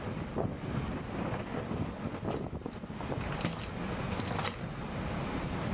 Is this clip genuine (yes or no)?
no